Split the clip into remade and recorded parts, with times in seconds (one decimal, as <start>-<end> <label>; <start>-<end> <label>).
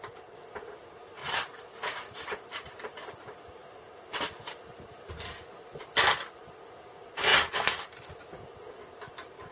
0.0-1.2 recorded; 1.2-5.1 remade; 5.1-9.5 recorded